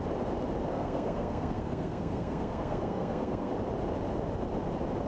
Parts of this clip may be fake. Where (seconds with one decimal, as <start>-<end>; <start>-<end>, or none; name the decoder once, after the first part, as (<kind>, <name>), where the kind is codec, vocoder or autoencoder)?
0.7-3.5 (codec, SNAC)